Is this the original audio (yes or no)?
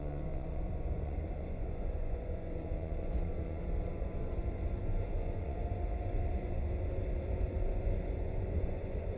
no